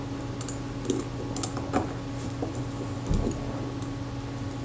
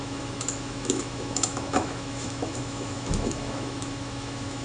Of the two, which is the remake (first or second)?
second